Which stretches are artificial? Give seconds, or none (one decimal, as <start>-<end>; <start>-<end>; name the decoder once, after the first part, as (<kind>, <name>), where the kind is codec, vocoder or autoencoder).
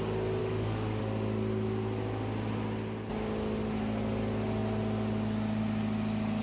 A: 0.4-1.0 (codec, DAC)